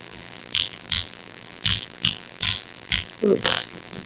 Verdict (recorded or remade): remade